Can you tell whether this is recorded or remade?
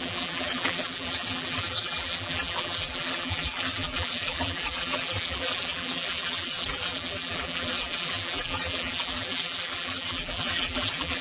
remade